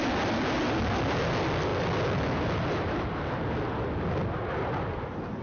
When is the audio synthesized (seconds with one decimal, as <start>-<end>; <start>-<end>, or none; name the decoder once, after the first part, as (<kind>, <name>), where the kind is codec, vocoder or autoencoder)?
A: none